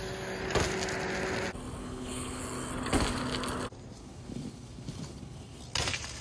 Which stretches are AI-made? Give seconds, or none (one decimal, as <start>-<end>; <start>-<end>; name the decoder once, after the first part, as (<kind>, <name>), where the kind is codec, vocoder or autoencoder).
1.8-2.4 (codec, HILCodec); 4.0-5.6